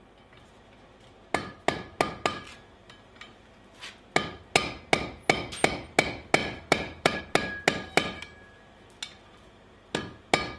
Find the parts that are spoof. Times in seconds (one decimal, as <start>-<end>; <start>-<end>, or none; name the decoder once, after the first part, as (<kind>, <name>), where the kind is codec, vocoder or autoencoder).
6.4-7.2 (vocoder, BigVGAN v2)